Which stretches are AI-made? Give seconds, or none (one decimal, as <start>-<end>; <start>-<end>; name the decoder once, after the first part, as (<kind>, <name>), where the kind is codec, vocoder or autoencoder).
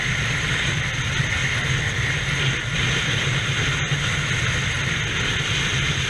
none